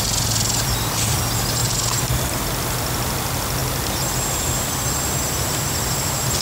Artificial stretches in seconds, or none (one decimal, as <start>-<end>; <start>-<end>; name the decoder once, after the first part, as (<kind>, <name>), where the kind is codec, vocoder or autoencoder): 1.6-2.4 (vocoder, BigVGAN v2)